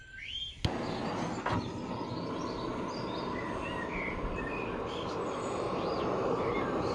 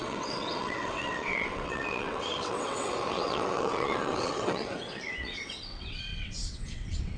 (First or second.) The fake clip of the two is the second